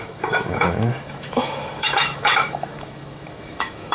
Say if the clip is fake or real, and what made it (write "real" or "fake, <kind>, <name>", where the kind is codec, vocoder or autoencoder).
fake, autoencoder, DAC-VAE